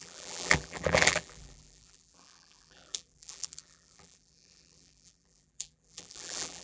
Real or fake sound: fake